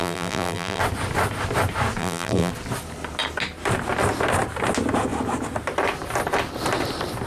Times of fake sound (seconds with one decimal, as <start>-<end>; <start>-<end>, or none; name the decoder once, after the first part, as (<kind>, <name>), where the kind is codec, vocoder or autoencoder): 0.0-0.8 (vocoder, BigVGAN v2); 2.0-2.5